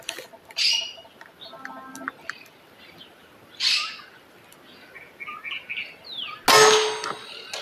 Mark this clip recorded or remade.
recorded